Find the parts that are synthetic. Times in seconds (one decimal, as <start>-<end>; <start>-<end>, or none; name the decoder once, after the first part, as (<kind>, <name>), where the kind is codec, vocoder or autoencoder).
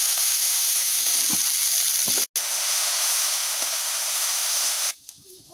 0.0-1.2 (autoencoder, DAC-VAE); 2.4-5.5